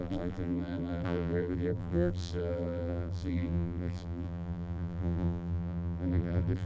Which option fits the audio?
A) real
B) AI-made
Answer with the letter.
B